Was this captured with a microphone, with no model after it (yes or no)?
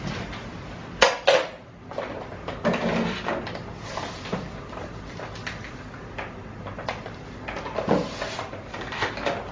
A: yes